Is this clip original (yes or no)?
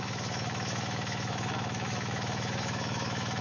no